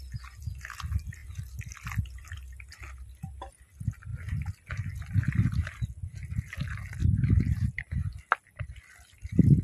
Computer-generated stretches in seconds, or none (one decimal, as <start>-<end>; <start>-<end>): none